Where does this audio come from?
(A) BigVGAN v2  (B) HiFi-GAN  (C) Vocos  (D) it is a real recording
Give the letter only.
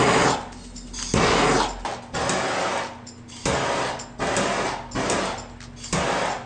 D